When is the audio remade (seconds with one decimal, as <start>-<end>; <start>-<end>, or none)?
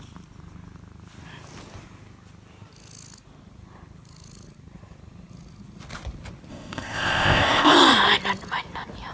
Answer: 6.5-7.7